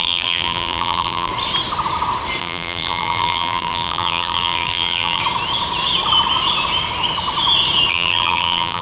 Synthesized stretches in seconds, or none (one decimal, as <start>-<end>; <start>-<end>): 0.0-1.3; 2.4-5.2; 7.9-8.8